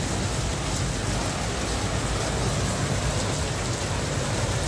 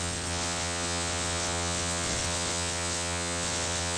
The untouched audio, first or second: first